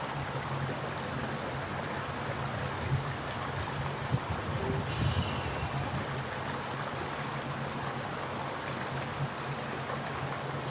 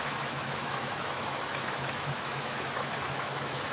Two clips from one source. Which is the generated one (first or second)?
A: second